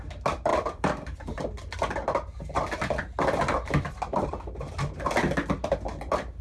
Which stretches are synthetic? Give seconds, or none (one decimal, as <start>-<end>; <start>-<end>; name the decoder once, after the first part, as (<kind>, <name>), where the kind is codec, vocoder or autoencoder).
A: 0.5-4.3 (vocoder, BigVGAN v2)